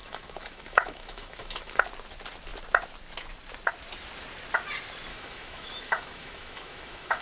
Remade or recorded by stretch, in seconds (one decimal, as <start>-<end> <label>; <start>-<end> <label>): 0.0-1.8 remade; 1.8-5.1 recorded; 5.1-7.2 remade